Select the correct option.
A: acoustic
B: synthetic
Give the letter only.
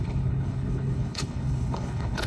B